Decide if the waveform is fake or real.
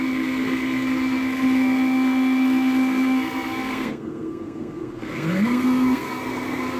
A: fake